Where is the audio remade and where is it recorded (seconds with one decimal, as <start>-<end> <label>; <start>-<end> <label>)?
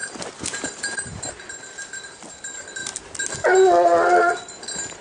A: 0.0-5.0 recorded